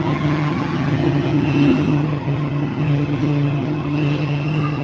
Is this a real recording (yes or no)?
no